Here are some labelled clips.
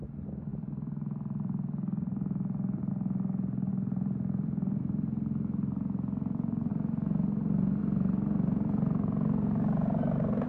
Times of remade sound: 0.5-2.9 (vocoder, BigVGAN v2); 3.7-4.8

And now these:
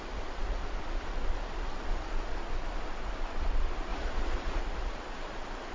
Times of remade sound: 3.9-4.6 (vocoder, Vocos)

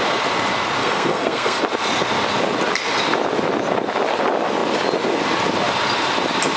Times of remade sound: 0.8-1.6 (codec, SNAC)

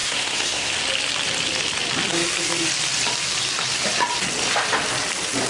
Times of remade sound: 0.0-0.7 (codec, SNAC)